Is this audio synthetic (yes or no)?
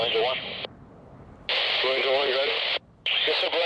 yes